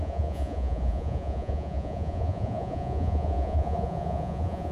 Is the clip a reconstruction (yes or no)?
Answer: yes